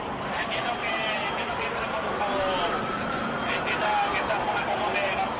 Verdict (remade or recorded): recorded